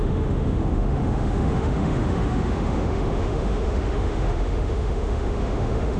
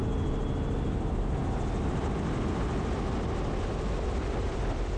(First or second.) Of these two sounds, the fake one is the first